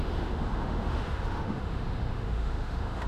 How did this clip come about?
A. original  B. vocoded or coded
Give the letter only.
B